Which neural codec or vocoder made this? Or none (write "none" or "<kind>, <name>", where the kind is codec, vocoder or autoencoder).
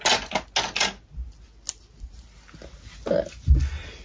none